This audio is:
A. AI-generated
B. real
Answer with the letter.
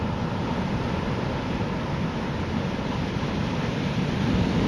B